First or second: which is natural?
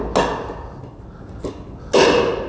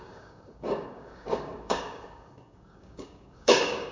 first